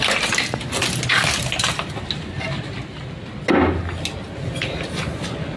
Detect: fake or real real